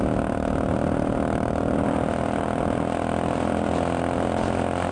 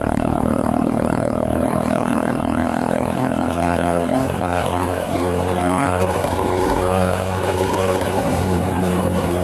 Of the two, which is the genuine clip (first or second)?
first